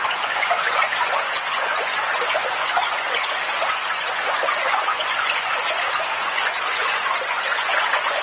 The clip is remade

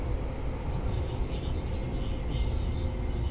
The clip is recorded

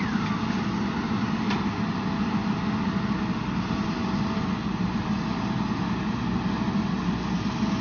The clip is recorded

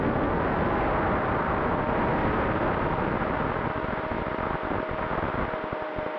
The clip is recorded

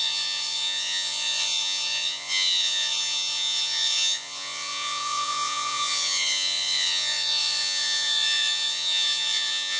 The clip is remade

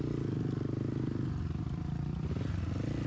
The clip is recorded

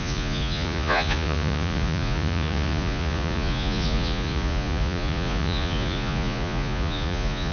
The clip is remade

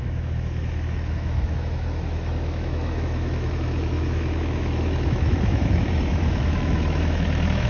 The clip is remade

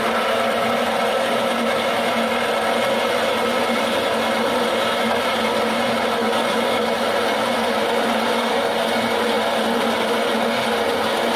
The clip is recorded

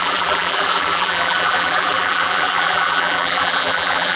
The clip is remade